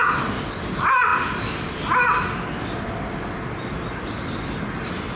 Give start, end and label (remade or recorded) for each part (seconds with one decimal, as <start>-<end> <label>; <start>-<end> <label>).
0.0-5.2 recorded